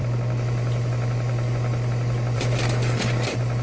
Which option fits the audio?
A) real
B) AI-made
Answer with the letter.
A